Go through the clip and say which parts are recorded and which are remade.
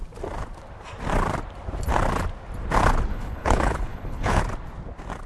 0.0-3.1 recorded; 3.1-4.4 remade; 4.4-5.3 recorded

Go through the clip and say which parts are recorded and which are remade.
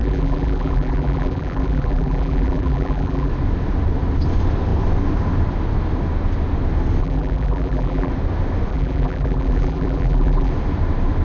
0.0-3.3 remade; 3.3-7.0 recorded; 7.0-8.1 remade; 8.1-8.7 recorded; 8.7-10.5 remade; 10.5-11.2 recorded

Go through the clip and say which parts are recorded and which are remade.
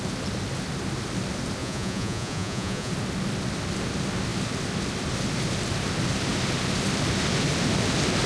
0.0-1.6 recorded; 1.6-2.9 remade; 2.9-8.3 recorded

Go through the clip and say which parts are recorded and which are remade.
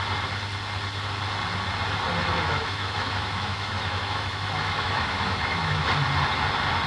0.0-2.2 recorded; 2.2-5.9 remade; 5.9-6.9 recorded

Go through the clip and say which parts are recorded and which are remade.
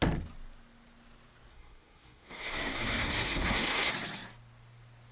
0.0-1.5 recorded; 1.5-3.9 remade; 3.9-5.1 recorded